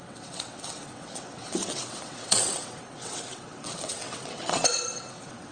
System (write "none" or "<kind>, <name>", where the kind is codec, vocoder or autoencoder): vocoder, WaveNeXt